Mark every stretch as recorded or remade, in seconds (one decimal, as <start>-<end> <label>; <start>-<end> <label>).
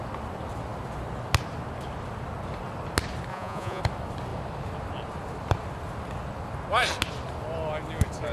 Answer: 0.0-3.3 recorded; 3.3-3.8 remade; 3.8-8.3 recorded